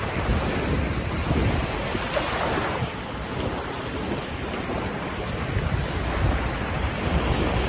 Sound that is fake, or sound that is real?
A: real